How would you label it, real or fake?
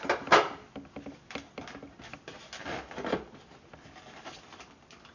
real